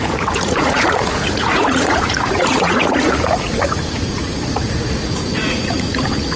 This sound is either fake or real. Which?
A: fake